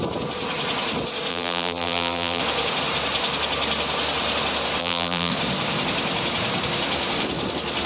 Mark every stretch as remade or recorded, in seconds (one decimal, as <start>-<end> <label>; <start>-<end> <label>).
0.0-1.3 recorded; 1.3-2.4 remade; 2.4-4.8 recorded; 4.8-5.3 remade; 5.3-7.9 recorded